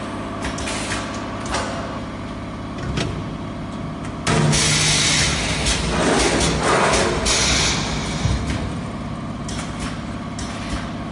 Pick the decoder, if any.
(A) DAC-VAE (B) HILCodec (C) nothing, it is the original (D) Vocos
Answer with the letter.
C